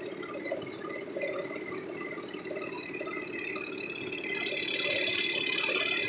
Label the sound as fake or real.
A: real